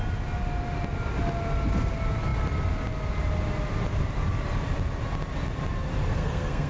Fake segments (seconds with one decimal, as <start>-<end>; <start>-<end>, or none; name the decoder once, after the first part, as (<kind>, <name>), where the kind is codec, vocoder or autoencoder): 6.1-6.7 (codec, SNAC)